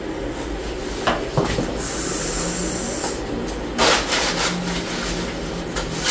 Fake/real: real